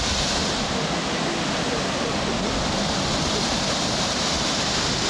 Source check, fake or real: real